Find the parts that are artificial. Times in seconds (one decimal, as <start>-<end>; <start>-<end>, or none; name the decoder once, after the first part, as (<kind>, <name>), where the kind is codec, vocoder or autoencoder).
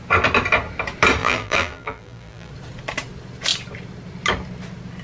1.2-2.5 (vocoder, BigVGAN v2)